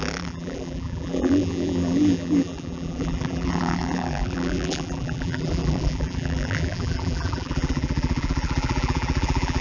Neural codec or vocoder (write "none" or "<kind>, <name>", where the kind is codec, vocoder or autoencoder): vocoder, BigVGAN v2